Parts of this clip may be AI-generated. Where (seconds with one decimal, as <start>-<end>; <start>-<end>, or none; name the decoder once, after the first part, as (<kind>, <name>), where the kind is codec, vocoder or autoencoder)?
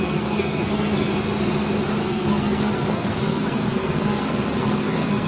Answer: 0.0-1.1 (codec, SNAC); 2.0-5.3